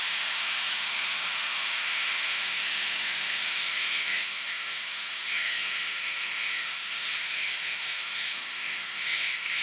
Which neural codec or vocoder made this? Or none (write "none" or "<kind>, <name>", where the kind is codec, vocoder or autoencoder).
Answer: autoencoder, DAC-VAE